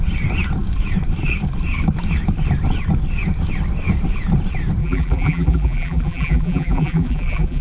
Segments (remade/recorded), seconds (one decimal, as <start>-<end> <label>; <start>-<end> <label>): 0.0-4.8 recorded; 4.8-7.6 remade